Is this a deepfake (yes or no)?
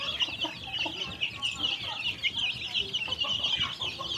no